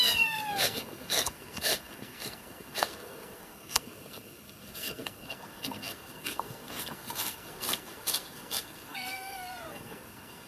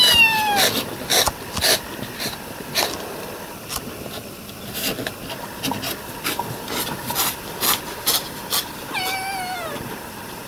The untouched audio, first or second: second